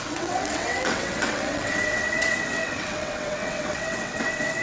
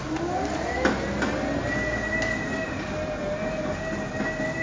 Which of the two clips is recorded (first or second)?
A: second